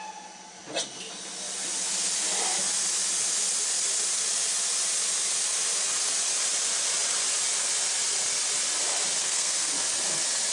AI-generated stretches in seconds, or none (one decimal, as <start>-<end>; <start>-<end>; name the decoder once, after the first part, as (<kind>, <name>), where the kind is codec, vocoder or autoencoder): 9.2-9.7 (codec, SNAC)